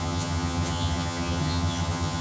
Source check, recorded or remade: remade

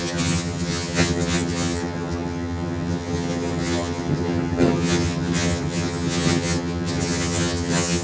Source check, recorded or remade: remade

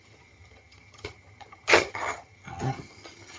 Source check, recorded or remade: remade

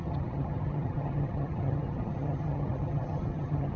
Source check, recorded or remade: remade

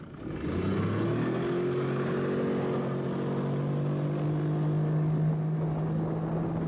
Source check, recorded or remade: recorded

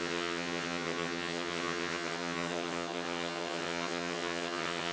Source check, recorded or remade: remade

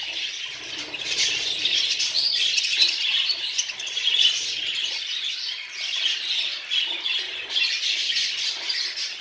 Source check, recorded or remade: recorded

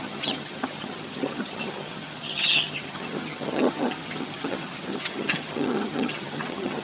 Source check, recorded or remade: remade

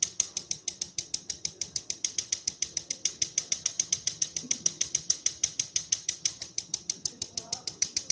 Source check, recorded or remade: remade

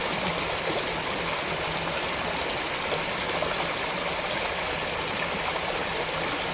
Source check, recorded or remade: recorded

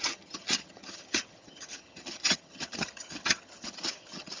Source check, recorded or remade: remade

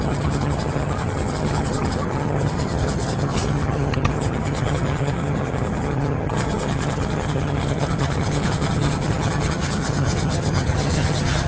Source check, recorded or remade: remade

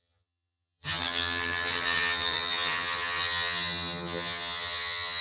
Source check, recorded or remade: remade